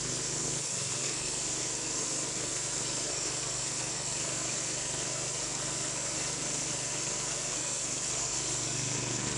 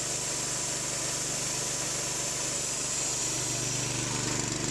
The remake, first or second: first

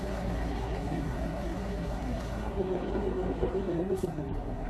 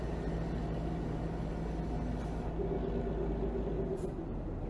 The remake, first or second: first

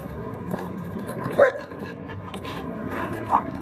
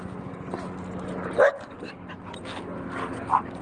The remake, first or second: first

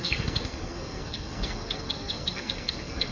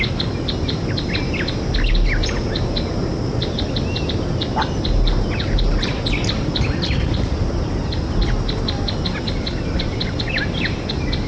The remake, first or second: first